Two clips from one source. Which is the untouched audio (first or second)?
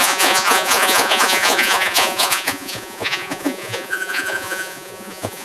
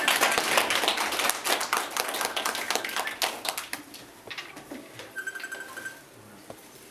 second